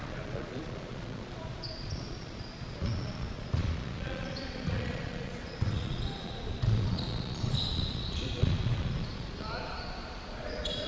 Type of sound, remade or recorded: remade